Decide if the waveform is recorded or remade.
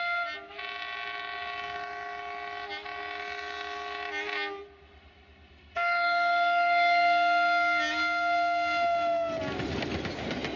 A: recorded